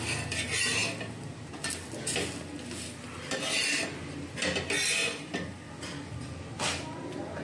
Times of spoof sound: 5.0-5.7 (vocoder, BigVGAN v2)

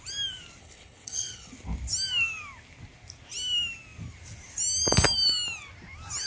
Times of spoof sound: 0.6-1.5 (codec, HILCodec)

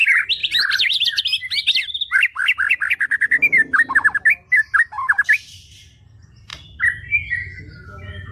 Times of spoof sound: 0.4-1.2 (vocoder, BigVGAN v2)

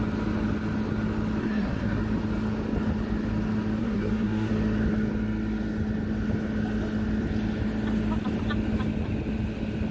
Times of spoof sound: 1.4-2.0 (codec, SNAC); 3.8-4.5

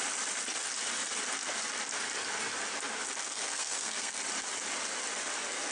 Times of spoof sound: 3.2-4.2 (codec, SNAC)

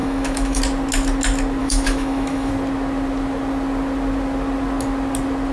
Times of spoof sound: 0.0-0.6 (autoencoder, DAC-VAE); 1.6-2.5

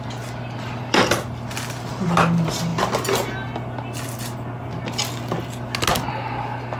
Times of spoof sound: none